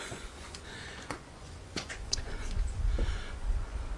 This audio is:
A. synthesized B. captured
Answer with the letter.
A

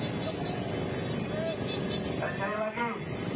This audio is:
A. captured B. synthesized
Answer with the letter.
A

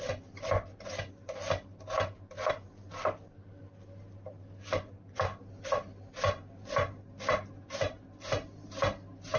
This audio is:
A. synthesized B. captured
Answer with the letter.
B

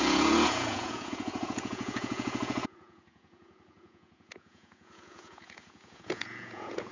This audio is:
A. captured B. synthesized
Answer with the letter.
B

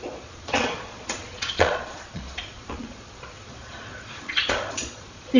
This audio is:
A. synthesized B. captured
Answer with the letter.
A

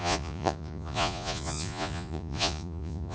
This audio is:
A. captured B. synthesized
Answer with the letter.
B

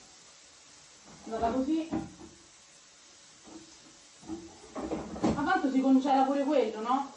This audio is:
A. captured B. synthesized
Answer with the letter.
A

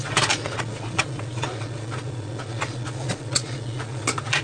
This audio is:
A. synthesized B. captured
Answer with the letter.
A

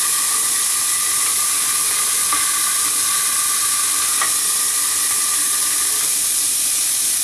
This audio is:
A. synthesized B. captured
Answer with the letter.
B